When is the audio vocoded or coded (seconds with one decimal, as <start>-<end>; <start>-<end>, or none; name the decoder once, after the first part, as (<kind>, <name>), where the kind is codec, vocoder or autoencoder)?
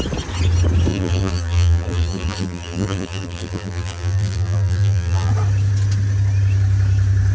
0.9-5.3 (vocoder, BigVGAN v2)